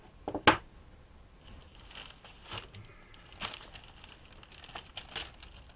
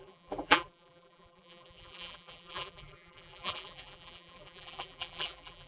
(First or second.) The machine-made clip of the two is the second